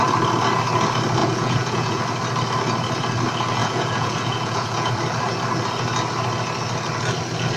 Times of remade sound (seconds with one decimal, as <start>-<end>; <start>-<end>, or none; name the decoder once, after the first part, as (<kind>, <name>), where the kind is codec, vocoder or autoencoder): 1.2-2.0 (vocoder, Vocos); 3.6-4.9